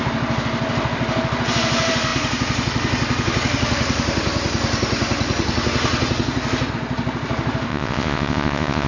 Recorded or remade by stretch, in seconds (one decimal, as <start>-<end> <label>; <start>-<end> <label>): 0.0-7.7 recorded; 7.7-8.9 remade